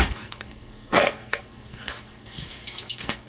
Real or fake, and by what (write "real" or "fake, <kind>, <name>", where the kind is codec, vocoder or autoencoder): fake, codec, SNAC